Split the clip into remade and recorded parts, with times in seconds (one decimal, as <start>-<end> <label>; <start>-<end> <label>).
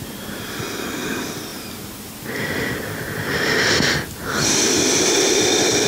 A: 0.0-5.9 recorded